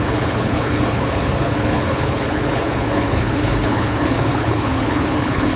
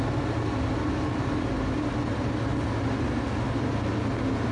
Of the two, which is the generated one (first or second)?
first